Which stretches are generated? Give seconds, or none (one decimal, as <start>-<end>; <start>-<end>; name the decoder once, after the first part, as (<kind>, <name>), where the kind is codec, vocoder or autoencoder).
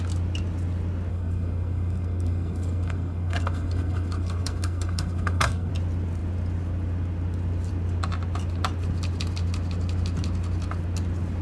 1.1-5.7 (codec, SNAC)